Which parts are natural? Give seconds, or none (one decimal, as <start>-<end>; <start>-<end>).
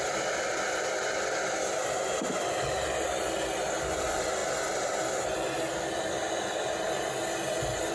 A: 0.0-7.9